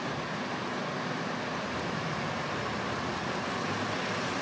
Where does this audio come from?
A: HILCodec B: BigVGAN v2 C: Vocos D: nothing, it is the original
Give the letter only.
D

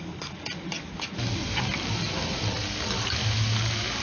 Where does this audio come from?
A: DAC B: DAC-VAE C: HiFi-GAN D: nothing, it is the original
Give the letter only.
D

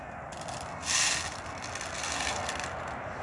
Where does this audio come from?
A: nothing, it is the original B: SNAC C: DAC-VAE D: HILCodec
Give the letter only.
A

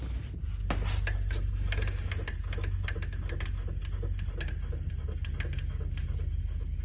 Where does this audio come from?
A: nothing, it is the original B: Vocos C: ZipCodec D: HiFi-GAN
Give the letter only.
A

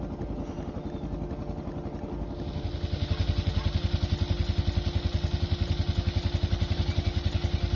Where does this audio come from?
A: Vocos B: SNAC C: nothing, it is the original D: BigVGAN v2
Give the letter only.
C